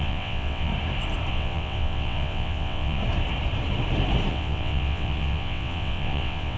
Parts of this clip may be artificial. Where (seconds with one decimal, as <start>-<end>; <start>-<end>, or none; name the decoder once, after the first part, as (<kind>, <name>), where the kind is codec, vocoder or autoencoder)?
0.0-0.7 (vocoder, WaveNeXt); 1.3-3.0; 4.3-6.6